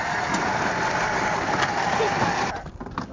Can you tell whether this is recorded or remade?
recorded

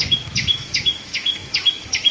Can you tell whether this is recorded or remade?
remade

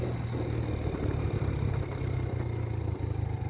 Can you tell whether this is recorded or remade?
recorded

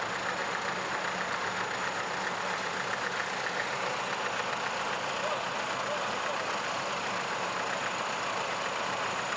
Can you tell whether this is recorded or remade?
recorded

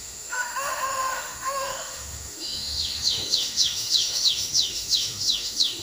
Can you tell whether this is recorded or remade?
remade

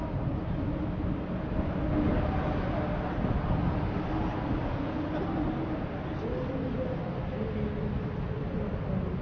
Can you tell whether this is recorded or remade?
recorded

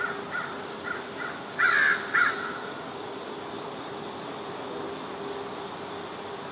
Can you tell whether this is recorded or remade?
recorded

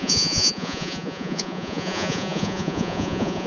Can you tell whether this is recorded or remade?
remade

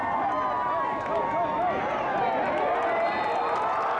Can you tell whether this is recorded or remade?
recorded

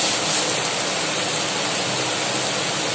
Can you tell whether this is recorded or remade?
recorded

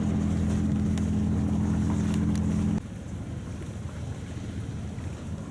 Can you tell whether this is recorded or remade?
recorded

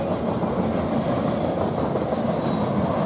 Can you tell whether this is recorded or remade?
recorded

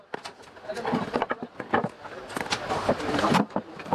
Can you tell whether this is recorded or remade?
recorded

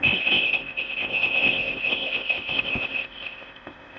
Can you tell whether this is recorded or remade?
remade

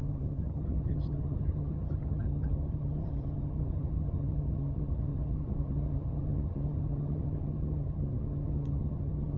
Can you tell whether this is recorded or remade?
remade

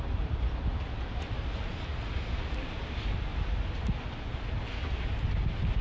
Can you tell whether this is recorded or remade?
recorded